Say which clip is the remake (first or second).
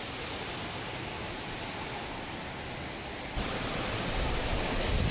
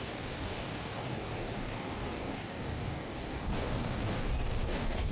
second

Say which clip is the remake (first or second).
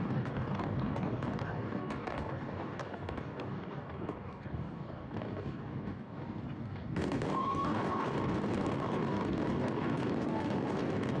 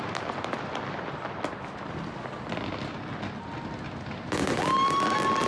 first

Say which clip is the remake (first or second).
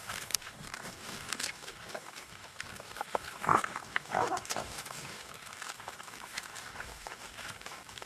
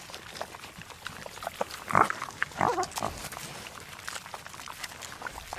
first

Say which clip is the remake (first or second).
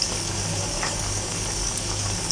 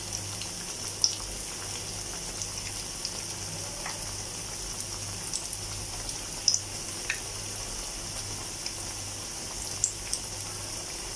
first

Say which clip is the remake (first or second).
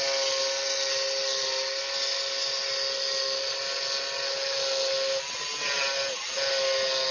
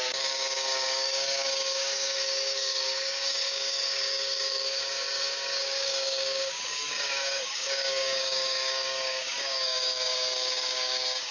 second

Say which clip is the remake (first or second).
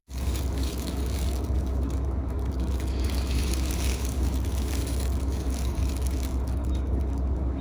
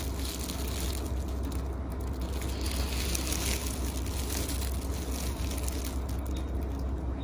first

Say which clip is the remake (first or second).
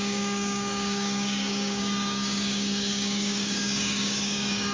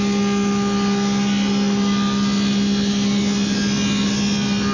first